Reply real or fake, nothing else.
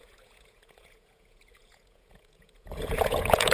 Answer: fake